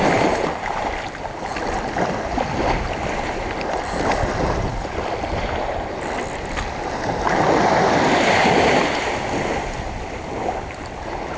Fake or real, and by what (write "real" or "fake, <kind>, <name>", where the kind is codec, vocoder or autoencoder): real